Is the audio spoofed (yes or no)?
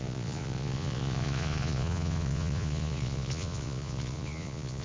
yes